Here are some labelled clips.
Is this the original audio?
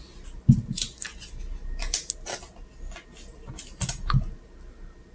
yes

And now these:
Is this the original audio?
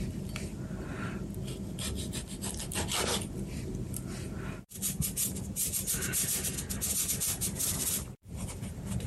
no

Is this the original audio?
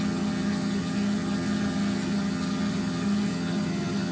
no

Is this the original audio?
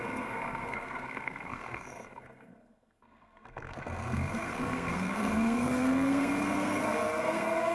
no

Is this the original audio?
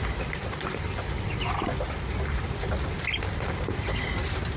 yes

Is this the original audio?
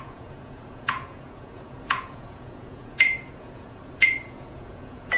no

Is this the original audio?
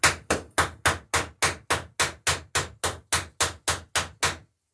yes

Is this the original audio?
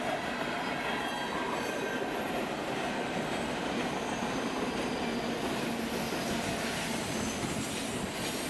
yes